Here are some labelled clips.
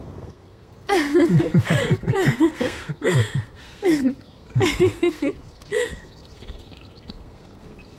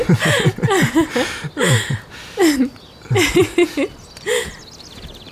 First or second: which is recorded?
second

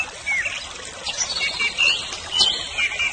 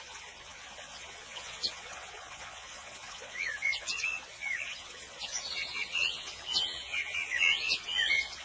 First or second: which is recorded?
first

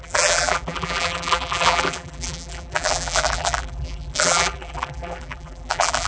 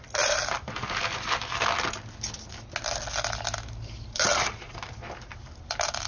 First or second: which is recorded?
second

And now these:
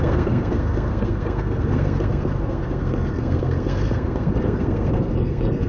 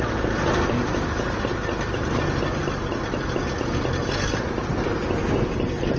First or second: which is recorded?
second